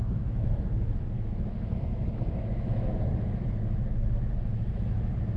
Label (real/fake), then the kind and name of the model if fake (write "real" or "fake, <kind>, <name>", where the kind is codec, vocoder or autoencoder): fake, autoencoder, DAC-VAE